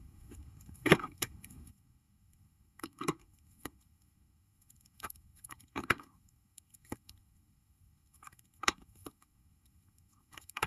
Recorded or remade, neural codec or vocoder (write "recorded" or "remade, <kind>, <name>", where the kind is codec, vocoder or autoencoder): remade, codec, SNAC